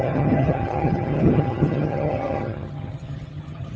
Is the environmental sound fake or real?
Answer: fake